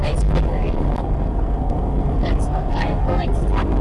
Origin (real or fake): fake